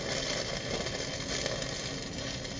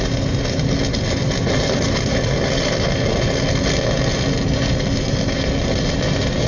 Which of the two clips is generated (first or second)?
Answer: first